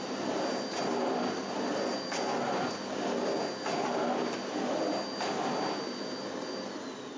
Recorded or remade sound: recorded